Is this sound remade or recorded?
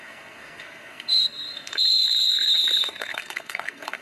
remade